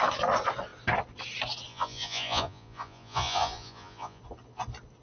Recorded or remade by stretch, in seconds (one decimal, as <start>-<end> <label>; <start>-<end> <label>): 0.0-1.7 recorded; 1.7-4.2 remade; 4.2-5.0 recorded